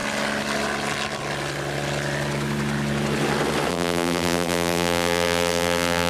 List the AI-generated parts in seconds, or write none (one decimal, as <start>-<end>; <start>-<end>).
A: 3.7-6.1